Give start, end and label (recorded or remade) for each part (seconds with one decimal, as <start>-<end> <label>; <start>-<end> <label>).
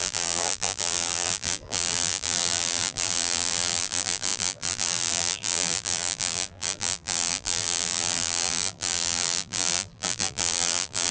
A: 0.0-11.1 remade